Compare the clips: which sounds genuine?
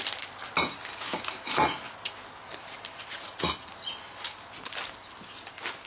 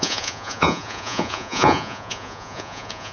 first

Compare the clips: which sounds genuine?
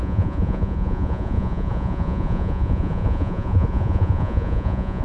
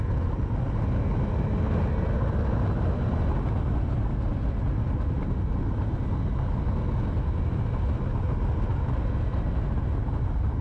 second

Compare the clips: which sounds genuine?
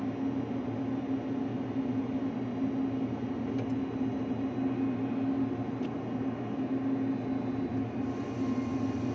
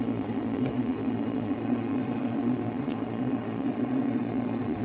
first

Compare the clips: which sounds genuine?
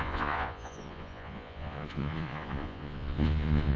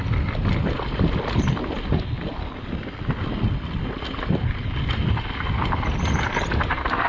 second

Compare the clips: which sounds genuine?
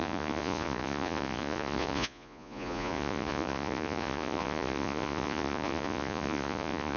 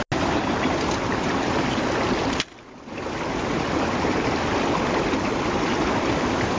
second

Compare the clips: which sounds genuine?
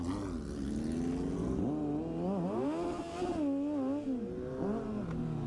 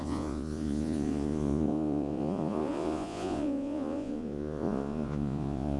first